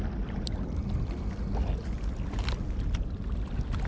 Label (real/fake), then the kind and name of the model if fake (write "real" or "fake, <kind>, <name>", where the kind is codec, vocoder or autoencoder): real